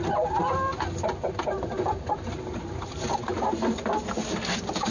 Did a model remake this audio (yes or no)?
no